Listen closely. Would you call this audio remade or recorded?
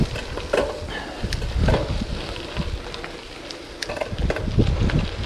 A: recorded